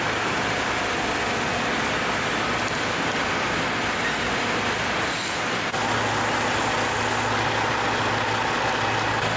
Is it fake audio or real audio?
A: real